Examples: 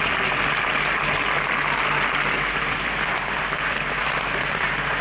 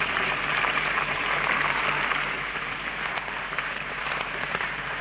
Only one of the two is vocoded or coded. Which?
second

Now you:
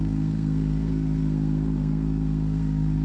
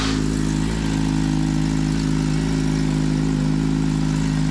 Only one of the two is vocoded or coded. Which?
first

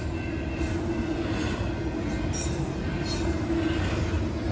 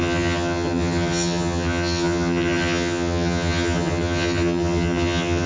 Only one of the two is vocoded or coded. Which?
second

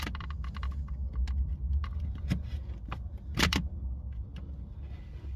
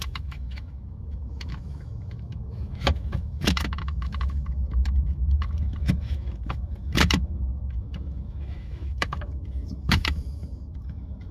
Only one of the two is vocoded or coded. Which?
second